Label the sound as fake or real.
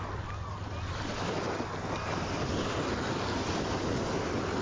real